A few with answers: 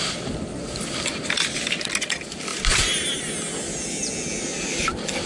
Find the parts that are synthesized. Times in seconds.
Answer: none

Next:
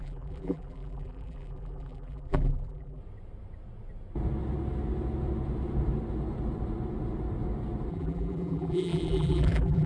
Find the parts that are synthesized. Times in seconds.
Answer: 0.0-3.0 (vocoder, BigVGAN v2); 7.9-9.9

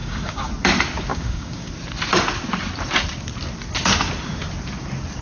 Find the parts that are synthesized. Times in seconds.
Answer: 0.0-0.5 (codec, DAC); 1.1-1.7

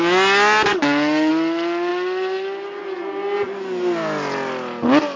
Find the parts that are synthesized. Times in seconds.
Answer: 0.7-1.3 (codec, DAC)

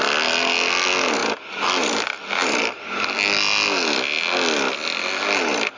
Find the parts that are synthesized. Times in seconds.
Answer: none

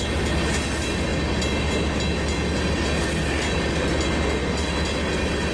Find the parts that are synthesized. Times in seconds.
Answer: none

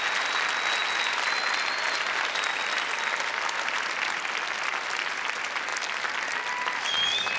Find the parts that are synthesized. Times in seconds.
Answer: none